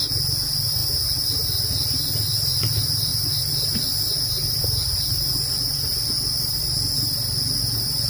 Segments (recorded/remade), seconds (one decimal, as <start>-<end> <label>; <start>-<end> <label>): 0.0-8.1 recorded